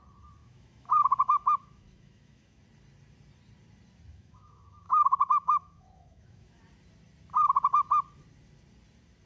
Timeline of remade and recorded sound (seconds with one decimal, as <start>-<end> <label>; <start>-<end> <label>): 0.0-0.4 recorded; 0.4-2.6 remade; 2.6-4.1 recorded; 4.1-6.6 remade; 6.6-9.3 recorded